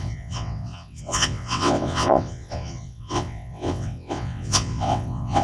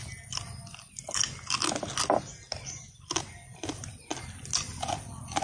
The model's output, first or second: first